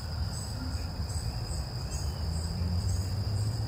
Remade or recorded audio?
remade